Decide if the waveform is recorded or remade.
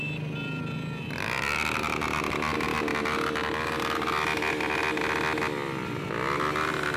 recorded